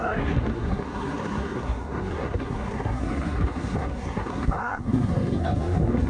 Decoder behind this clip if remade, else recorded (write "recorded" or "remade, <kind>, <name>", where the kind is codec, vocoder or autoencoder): remade, codec, SNAC